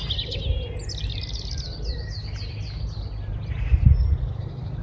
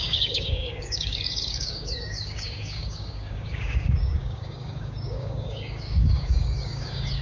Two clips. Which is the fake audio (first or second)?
second